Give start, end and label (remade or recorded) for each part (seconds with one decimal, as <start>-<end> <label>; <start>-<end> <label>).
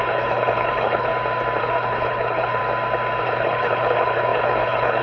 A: 0.0-1.1 remade; 1.1-1.6 recorded; 1.6-2.6 remade; 2.6-3.2 recorded; 3.2-5.0 remade